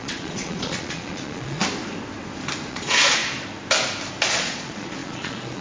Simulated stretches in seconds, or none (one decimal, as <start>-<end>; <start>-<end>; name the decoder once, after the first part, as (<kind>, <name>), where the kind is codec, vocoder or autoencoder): 0.0-1.6 (vocoder, Vocos); 2.7-3.2; 4.3-5.6